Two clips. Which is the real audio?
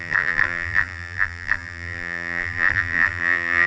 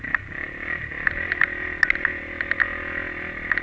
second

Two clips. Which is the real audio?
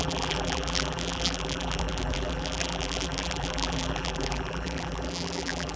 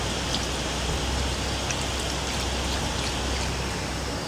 second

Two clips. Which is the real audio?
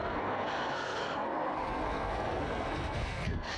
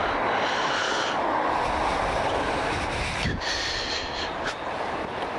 second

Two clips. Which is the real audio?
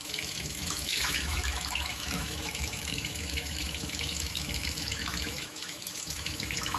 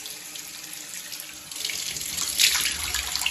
second